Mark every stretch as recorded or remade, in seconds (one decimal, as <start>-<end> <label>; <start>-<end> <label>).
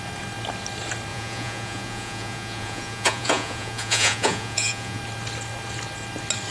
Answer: 0.0-1.1 recorded; 1.1-5.0 remade; 5.0-6.5 recorded